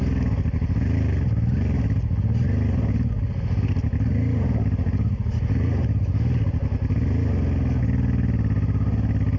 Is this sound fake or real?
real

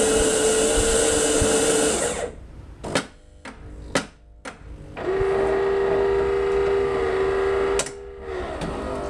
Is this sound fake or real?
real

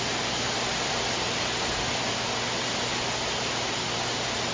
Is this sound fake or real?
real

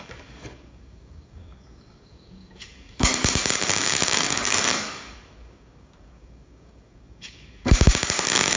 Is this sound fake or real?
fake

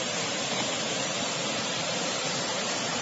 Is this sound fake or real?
fake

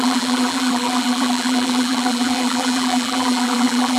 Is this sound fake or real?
fake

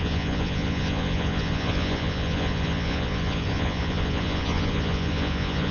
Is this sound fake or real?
fake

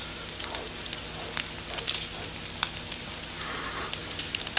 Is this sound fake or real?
real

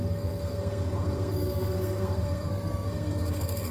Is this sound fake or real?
fake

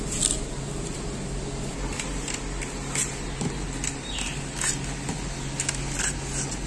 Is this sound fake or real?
real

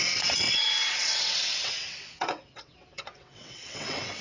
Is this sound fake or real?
fake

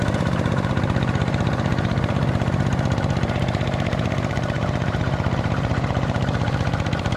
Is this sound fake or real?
fake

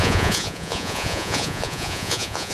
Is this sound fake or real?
fake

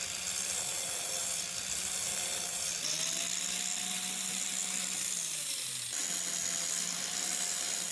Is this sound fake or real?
real